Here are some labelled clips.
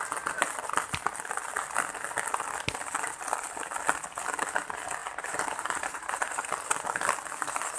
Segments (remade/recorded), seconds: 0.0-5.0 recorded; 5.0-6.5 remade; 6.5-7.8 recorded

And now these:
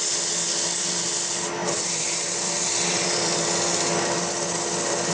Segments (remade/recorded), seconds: 0.0-1.6 recorded; 1.6-3.5 remade; 3.5-5.1 recorded

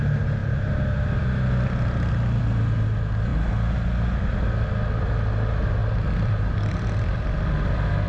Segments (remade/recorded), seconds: 0.0-0.4 recorded; 0.4-2.4 remade; 2.4-5.8 recorded; 5.8-8.1 remade

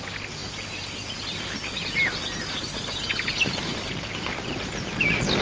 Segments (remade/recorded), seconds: 0.0-0.4 recorded; 0.4-1.5 remade; 1.5-3.3 recorded; 3.3-4.2 remade; 4.2-5.4 recorded